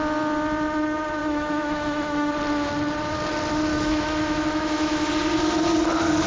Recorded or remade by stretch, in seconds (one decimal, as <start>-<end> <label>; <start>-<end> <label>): 0.0-1.2 recorded; 1.2-2.3 remade; 2.3-3.7 recorded; 3.7-5.1 remade; 5.1-6.3 recorded